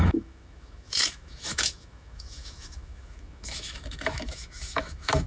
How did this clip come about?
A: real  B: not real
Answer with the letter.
B